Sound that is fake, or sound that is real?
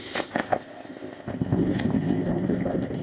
fake